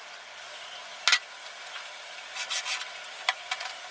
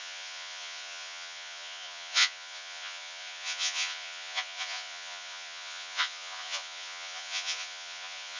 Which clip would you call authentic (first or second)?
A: first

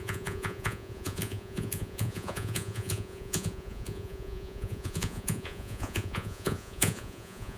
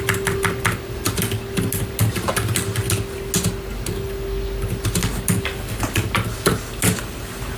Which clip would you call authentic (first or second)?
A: second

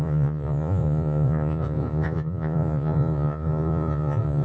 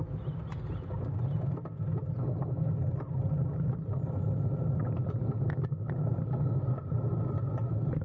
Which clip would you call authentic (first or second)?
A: second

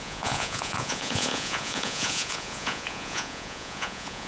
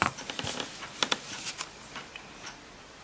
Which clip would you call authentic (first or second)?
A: second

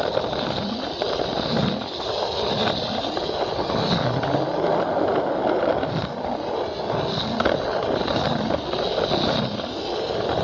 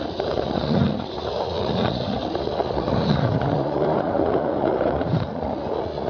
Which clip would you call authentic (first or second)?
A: first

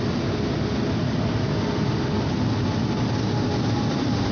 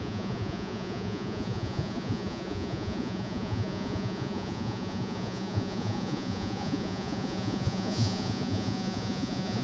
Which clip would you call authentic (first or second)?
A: first